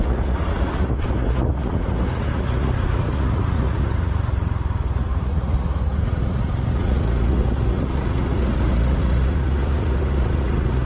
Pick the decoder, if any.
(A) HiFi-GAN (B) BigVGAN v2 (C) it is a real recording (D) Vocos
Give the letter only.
D